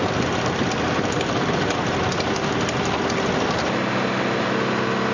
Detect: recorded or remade recorded